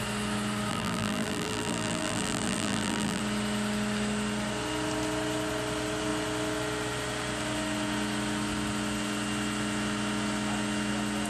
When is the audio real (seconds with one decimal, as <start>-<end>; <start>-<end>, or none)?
0.0-0.7; 3.2-11.3